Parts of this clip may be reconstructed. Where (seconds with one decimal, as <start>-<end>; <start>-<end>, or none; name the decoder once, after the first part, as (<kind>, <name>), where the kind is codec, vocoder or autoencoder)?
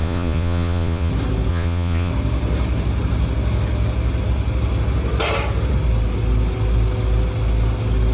0.0-1.1 (vocoder, Vocos); 1.5-2.1